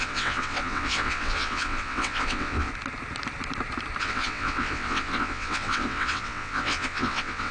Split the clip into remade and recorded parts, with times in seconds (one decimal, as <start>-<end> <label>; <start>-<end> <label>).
0.0-2.7 remade; 2.7-4.0 recorded; 4.0-7.5 remade